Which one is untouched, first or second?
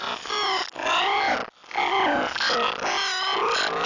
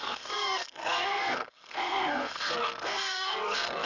first